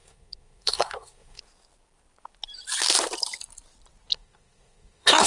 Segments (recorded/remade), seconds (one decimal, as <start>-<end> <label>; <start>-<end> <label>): 0.0-1.4 remade; 1.4-4.1 recorded; 4.1-5.3 remade